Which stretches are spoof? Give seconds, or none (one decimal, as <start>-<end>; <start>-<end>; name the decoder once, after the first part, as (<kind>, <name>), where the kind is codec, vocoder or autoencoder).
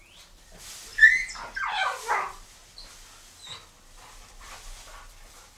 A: 0.0-0.9 (vocoder, BigVGAN v2); 4.3-5.6